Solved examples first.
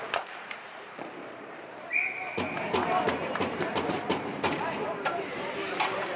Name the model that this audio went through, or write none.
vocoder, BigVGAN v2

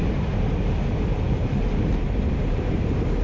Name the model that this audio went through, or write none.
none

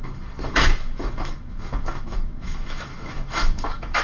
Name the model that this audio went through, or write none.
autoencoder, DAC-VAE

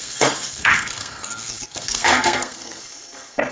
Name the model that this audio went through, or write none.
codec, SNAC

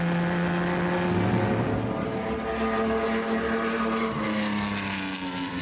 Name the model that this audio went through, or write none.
none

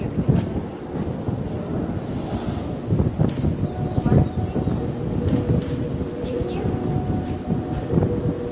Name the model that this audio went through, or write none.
none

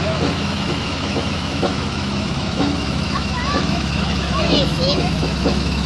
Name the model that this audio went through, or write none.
autoencoder, DAC-VAE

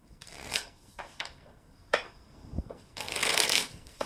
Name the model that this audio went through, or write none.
codec, SNAC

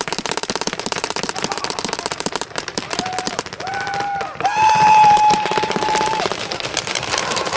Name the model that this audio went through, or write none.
vocoder, BigVGAN v2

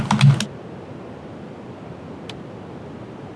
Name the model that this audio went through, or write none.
none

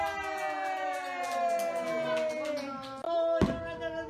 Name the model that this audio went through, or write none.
none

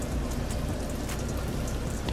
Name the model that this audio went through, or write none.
none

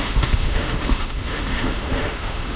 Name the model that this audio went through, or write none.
autoencoder, DAC-VAE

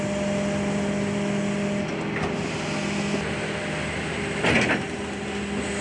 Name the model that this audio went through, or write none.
none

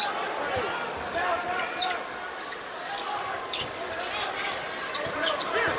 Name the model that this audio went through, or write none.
none